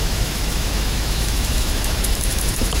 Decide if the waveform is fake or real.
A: fake